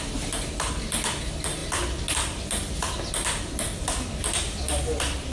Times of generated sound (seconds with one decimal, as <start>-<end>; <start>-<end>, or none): none